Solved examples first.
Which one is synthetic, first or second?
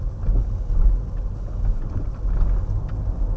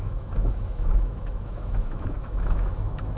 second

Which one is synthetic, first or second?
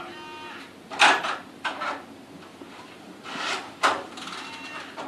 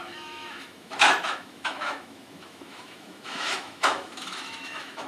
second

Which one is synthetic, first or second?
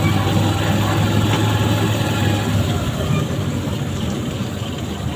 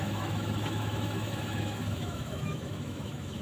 second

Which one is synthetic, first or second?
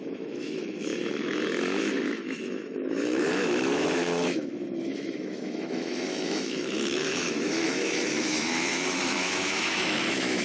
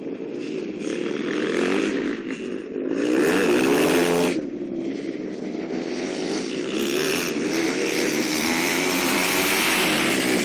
first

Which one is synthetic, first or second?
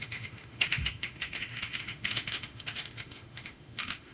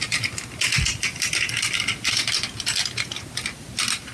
first